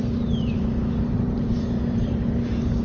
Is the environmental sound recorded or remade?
remade